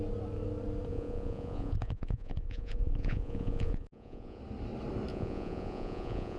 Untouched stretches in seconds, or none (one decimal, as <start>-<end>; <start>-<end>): 0.0-0.9; 4.4-5.1